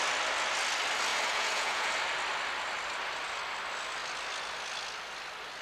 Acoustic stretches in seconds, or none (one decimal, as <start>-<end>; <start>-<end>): 0.0-1.1; 1.9-5.6